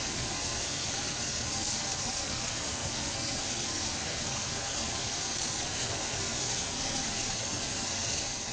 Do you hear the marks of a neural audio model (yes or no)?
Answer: yes